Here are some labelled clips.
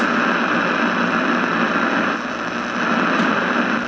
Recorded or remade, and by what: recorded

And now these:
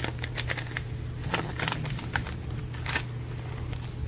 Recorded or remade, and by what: recorded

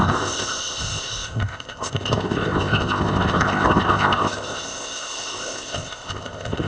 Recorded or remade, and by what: remade, codec, ZipCodec